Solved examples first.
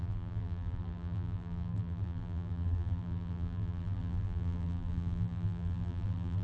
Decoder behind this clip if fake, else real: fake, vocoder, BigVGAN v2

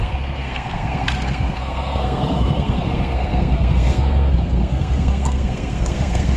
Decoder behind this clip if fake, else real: fake, codec, SNAC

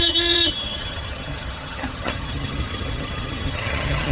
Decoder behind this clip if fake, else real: fake, vocoder, HiFi-GAN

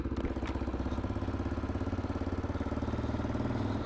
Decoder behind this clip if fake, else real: real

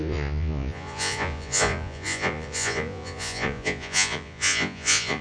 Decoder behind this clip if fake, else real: fake, vocoder, Vocos